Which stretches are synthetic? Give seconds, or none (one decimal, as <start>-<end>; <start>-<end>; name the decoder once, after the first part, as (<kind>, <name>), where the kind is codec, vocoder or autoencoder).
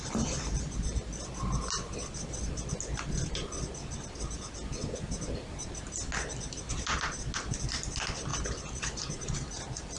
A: none